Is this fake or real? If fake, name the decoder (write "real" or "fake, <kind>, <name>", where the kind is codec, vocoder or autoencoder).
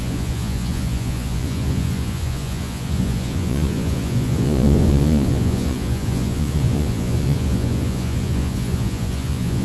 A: fake, vocoder, Vocos